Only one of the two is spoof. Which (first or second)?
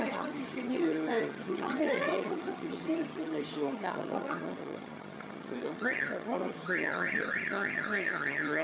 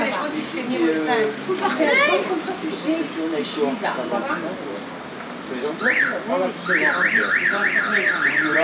first